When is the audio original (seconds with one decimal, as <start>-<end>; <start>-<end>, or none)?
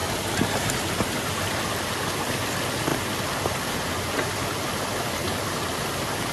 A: 0.0-5.2; 5.7-6.3